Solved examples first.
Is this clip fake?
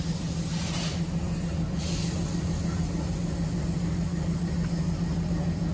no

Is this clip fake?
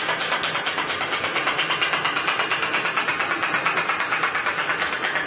no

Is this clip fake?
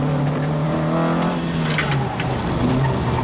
no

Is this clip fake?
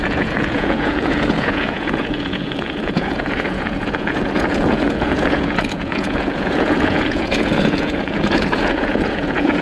yes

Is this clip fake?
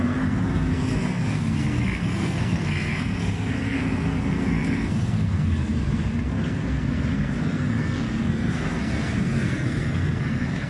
yes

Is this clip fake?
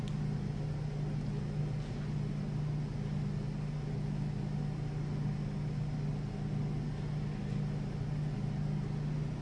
no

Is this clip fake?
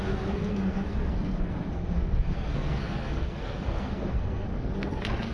yes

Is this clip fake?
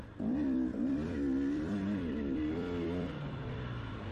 yes